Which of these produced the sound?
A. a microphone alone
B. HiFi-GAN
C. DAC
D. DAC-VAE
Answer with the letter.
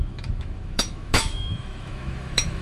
D